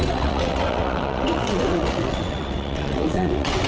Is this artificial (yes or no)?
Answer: yes